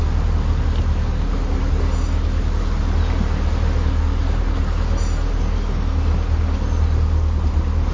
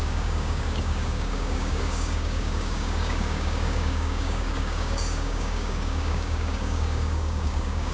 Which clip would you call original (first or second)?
first